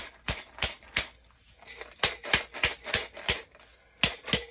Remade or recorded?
recorded